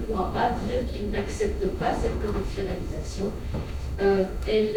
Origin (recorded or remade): remade